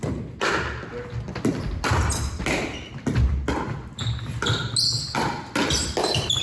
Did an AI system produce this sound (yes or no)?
no